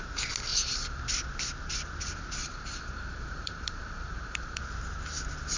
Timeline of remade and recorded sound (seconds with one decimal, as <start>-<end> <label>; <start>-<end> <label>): 0.0-0.5 recorded; 0.5-1.0 remade; 1.0-2.4 recorded; 2.4-4.6 remade; 4.6-5.6 recorded